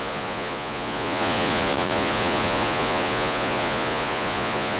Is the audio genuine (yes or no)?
no